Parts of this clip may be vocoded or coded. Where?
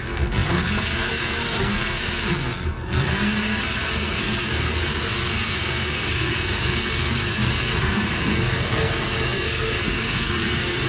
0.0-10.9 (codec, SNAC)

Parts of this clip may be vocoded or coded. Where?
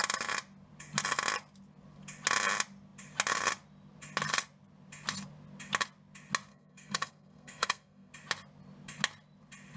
6.5-8.1 (codec, SNAC)